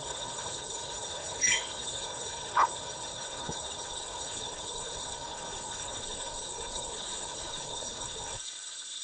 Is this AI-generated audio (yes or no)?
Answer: yes